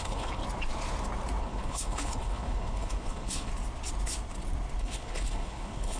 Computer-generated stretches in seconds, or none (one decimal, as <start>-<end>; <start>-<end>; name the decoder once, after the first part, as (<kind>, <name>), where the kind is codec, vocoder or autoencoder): 0.0-0.4 (codec, HILCodec); 1.4-3.5; 4.8-6.0